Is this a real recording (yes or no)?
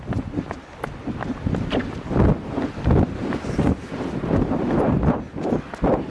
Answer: yes